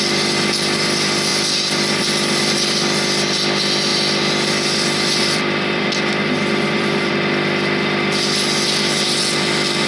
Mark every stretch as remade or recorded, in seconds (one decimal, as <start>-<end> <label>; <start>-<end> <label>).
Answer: 0.0-3.9 recorded; 3.9-7.1 remade; 7.1-9.9 recorded

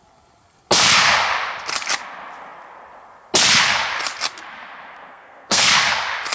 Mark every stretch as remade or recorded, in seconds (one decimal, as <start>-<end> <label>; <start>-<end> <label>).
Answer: 0.0-5.1 recorded; 5.1-5.7 remade; 5.7-6.3 recorded

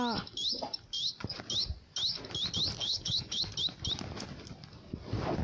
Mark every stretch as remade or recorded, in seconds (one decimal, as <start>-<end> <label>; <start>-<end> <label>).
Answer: 0.0-2.8 recorded; 2.8-3.4 remade; 3.4-5.4 recorded

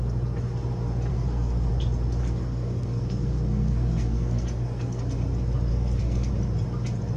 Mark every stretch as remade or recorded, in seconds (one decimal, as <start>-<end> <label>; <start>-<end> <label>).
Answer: 0.0-1.1 recorded; 1.1-1.7 remade; 1.7-2.2 recorded; 2.2-5.0 remade; 5.0-5.7 recorded; 5.7-6.3 remade; 6.3-7.2 recorded

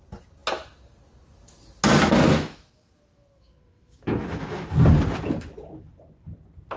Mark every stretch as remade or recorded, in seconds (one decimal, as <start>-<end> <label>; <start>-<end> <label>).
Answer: 0.0-2.3 recorded; 2.3-4.7 remade; 4.7-6.8 recorded

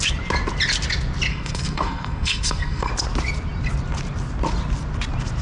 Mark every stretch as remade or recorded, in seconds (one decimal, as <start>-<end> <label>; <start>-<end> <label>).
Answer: 0.0-1.3 recorded; 1.3-2.9 remade; 2.9-5.4 recorded

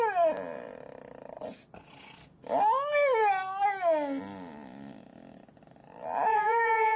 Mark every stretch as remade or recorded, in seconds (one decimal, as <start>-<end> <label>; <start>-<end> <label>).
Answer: 0.0-6.3 recorded; 6.3-7.0 remade